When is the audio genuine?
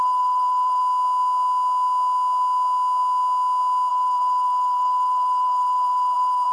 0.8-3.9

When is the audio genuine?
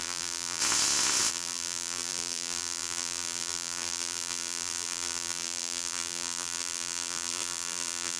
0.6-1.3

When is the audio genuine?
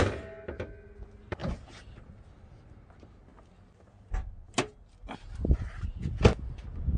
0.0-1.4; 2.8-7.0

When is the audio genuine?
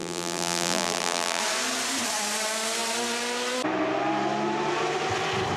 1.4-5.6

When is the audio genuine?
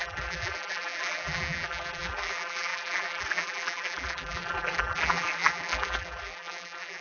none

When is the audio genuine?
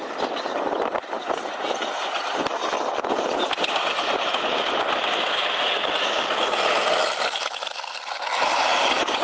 2.5-3.1